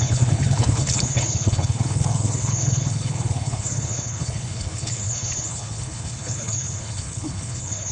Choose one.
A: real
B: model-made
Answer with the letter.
B